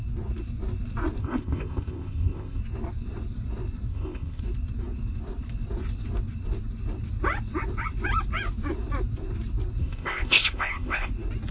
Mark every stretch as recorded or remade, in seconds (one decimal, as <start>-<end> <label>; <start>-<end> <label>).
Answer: 0.0-1.2 recorded; 1.2-2.6 remade; 2.6-3.9 recorded; 3.9-4.4 remade; 4.4-9.8 recorded; 9.8-11.1 remade; 11.1-11.5 recorded